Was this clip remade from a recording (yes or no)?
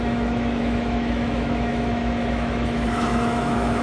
yes